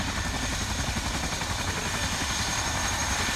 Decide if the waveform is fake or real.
fake